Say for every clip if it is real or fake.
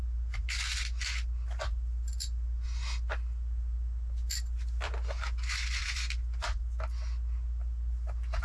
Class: real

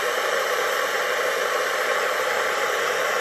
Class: real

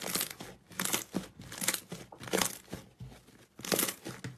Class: real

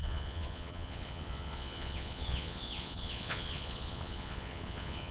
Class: fake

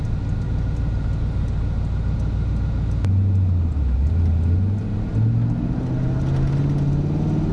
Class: real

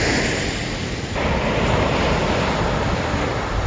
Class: real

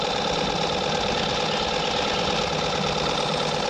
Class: real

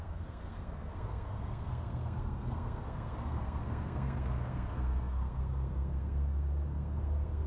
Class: fake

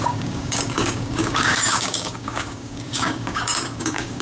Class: fake